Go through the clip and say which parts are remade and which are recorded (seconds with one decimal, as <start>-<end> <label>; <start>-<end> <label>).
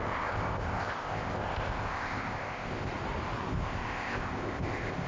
0.0-2.9 remade; 2.9-3.5 recorded; 3.5-5.1 remade